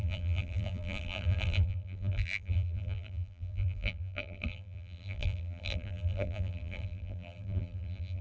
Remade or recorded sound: remade